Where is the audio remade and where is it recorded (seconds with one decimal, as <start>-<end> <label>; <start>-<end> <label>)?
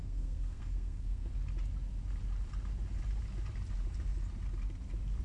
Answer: 0.0-1.3 remade; 1.3-5.2 recorded